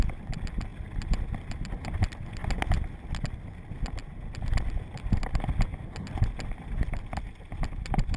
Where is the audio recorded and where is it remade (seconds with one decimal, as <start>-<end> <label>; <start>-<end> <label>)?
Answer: 0.0-8.2 recorded